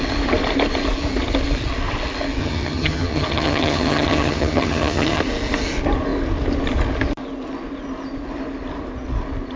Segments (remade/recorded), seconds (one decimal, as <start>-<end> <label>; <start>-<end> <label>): 0.0-2.4 recorded; 2.4-5.2 remade; 5.2-9.6 recorded